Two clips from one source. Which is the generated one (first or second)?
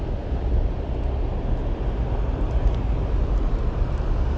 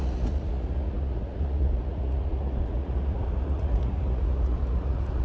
second